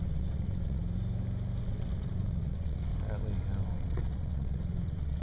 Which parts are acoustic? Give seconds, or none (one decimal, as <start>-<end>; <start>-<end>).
0.8-1.6; 2.9-3.6